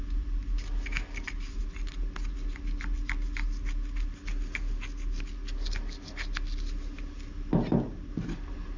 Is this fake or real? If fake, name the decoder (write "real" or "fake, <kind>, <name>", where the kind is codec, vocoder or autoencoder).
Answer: real